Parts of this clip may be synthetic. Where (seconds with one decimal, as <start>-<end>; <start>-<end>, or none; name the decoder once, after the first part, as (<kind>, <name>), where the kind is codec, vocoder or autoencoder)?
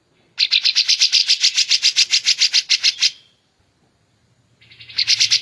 none